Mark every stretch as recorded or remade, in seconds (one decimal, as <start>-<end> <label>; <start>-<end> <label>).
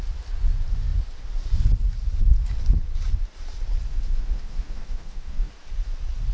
0.0-3.9 recorded; 3.9-5.5 remade; 5.5-6.3 recorded